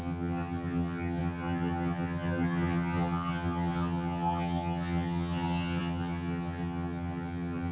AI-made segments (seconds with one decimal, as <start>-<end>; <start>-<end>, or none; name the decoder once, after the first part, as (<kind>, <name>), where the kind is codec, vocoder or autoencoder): 0.0-7.7 (vocoder, HiFi-GAN)

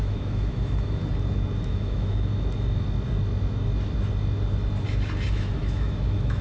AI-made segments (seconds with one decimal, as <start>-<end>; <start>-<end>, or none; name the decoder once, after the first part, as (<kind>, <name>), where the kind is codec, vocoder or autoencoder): 0.0-1.0 (autoencoder, DAC-VAE); 1.6-2.3; 5.3-6.4

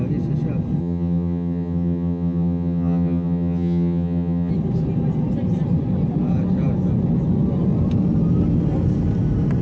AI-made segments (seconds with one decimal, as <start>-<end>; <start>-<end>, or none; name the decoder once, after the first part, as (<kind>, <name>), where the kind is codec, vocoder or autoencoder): 0.8-4.5 (vocoder, HiFi-GAN)

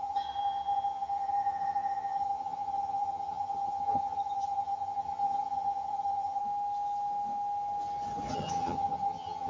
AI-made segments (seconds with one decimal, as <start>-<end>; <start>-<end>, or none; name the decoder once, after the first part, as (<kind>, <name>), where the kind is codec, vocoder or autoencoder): 0.0-6.4 (vocoder, HiFi-GAN); 8.3-9.5

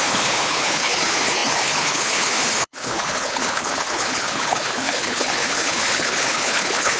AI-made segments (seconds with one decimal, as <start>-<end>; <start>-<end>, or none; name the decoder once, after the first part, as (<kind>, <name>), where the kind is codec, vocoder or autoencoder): 0.0-7.0 (codec, HILCodec)

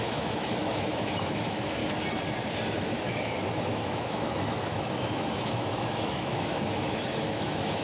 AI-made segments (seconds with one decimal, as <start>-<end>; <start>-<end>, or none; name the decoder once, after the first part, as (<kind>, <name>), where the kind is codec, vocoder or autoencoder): 0.0-1.8 (autoencoder, DAC-VAE); 3.0-7.8

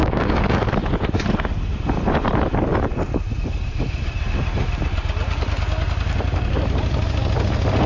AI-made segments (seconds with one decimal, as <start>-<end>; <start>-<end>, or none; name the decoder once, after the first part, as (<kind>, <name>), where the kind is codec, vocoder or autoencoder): 0.0-0.6 (codec, DAC)